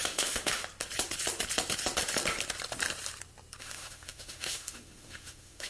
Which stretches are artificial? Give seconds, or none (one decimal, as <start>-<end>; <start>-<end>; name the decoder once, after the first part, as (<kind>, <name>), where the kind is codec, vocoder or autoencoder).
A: 0.0-0.6 (autoencoder, DAC-VAE); 3.6-5.7

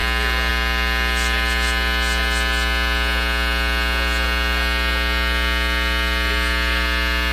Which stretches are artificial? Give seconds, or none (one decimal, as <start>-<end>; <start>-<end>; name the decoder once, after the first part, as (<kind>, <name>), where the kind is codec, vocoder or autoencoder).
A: none

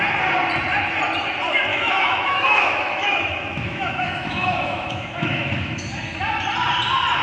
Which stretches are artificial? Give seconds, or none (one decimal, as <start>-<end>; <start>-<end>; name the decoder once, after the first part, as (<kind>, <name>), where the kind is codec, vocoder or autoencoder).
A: 1.7-6.0 (autoencoder, DAC-VAE)

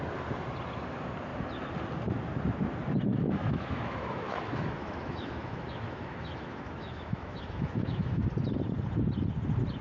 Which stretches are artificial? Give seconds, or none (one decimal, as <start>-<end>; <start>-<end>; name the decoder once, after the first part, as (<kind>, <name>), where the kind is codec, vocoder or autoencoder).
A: 3.1-8.2 (autoencoder, DAC-VAE)

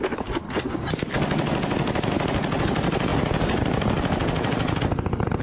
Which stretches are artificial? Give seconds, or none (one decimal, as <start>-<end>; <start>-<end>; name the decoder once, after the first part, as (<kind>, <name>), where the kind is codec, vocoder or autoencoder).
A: none